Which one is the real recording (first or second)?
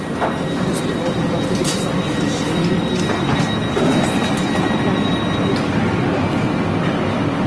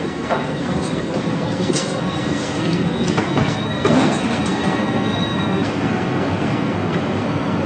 first